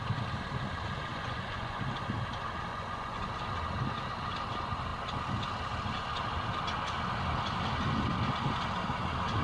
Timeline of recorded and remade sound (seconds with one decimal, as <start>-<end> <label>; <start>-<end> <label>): 0.0-1.1 recorded; 1.1-1.8 remade; 1.8-2.7 recorded; 2.7-3.3 remade; 3.3-9.4 recorded